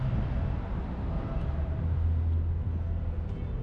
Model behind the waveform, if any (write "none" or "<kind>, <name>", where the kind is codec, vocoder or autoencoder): none